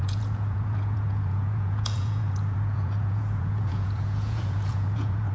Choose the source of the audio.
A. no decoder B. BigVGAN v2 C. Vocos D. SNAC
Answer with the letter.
C